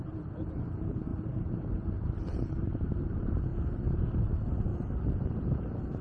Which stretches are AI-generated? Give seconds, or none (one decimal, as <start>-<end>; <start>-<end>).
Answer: 0.0-3.5; 4.2-4.7; 5.3-6.0